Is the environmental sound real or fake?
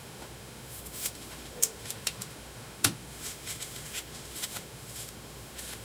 fake